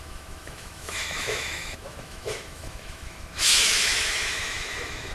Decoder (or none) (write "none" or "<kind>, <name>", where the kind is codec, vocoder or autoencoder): autoencoder, DAC-VAE